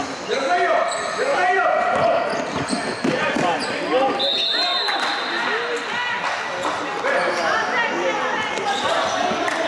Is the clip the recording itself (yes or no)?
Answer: yes